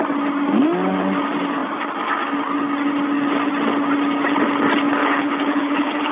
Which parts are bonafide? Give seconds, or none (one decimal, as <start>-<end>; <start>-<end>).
0.0-5.0

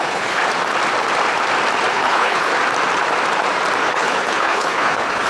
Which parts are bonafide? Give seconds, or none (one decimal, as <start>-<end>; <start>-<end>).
0.4-1.9; 2.5-3.8

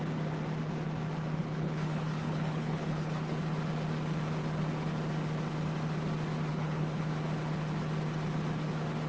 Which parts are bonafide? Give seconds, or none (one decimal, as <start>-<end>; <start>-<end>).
0.0-1.4; 3.4-6.5; 7.1-9.1

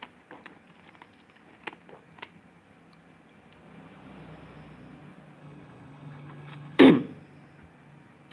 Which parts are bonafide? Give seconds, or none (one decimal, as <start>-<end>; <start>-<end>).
0.0-5.4; 6.9-8.3

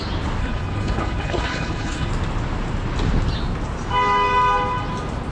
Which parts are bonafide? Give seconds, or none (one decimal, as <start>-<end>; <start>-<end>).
0.0-0.4; 2.1-5.3